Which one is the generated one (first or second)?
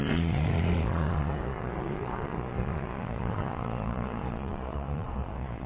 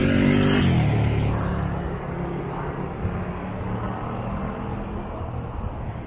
first